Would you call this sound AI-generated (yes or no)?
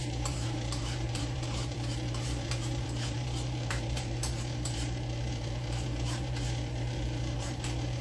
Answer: yes